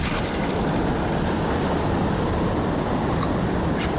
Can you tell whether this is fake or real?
fake